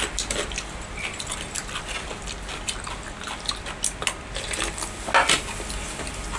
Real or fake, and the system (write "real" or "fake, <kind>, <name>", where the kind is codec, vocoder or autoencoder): real